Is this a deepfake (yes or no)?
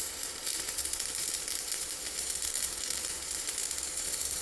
yes